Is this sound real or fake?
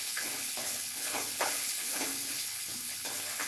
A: fake